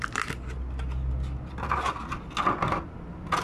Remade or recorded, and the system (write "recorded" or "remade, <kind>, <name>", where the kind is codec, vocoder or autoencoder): recorded